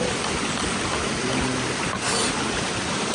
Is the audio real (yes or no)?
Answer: yes